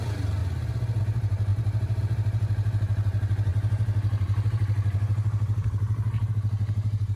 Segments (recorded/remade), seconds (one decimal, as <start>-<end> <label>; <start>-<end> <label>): 0.0-0.4 remade; 0.4-1.0 recorded; 1.0-7.2 remade